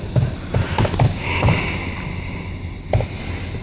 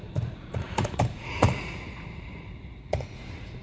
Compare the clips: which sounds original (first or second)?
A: first